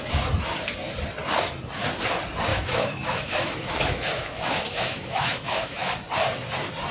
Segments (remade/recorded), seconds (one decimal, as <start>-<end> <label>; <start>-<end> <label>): 0.0-2.5 recorded; 2.5-5.9 remade; 5.9-6.9 recorded